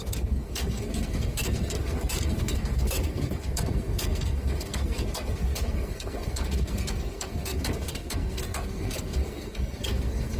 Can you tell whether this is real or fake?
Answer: fake